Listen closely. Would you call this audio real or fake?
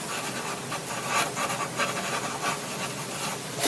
real